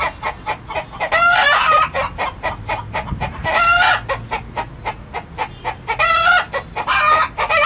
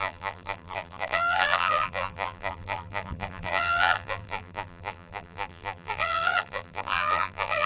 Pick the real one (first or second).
first